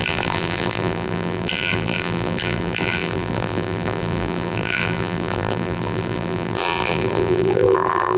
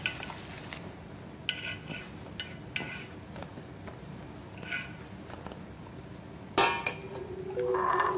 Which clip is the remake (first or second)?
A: first